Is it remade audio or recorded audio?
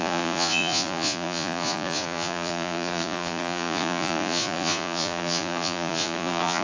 remade